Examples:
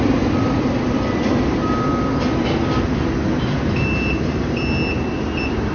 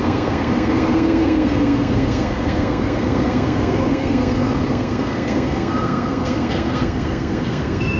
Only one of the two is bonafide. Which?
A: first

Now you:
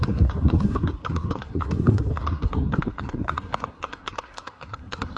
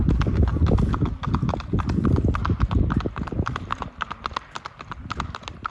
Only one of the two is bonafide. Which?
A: second